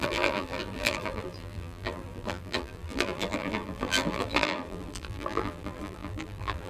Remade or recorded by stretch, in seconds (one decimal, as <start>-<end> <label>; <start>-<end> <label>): 0.0-6.7 remade